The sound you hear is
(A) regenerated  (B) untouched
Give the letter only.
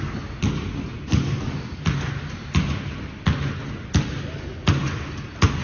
B